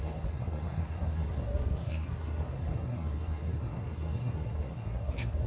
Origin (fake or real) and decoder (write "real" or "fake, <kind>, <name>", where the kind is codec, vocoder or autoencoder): fake, codec, SNAC